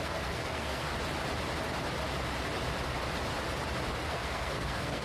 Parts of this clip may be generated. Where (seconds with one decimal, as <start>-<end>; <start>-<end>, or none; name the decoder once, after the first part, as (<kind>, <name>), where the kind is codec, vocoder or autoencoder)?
0.0-0.9 (codec, SNAC); 3.9-5.0